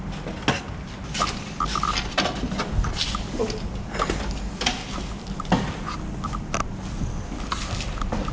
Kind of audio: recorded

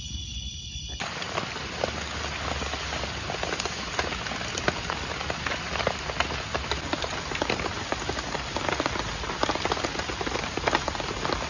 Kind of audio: recorded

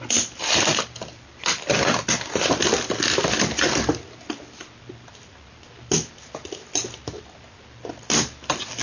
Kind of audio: recorded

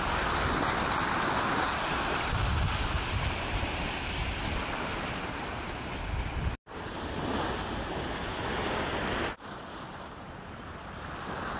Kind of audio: recorded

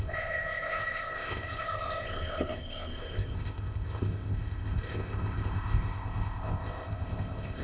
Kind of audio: remade